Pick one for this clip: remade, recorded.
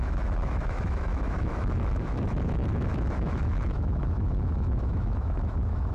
remade